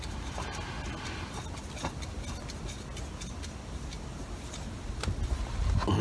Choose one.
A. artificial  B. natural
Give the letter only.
B